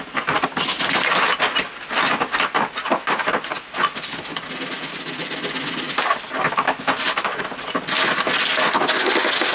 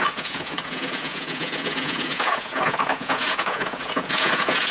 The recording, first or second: first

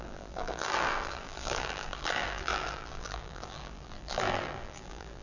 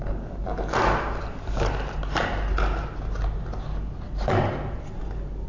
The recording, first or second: second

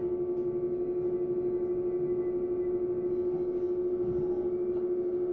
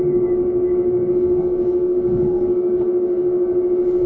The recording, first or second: first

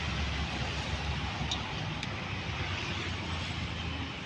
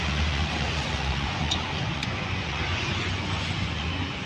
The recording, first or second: first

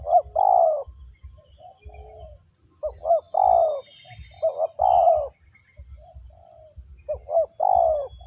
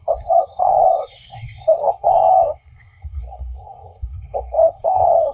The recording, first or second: first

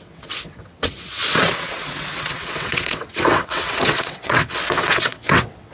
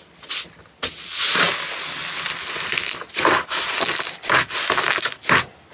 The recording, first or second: second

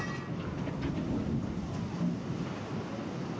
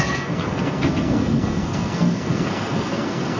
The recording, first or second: first